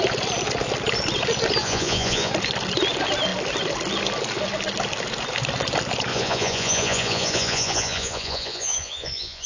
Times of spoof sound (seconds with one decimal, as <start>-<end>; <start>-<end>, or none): 1.6-2.3; 6.1-9.5